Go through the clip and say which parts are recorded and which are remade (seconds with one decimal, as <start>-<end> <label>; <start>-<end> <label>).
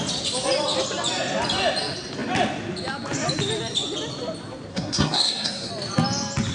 0.0-4.7 recorded; 4.7-5.7 remade; 5.7-6.5 recorded